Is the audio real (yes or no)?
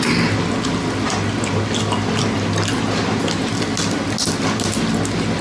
yes